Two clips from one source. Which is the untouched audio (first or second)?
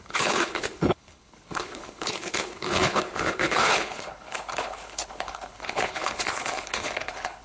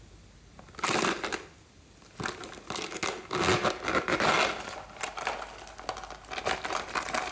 second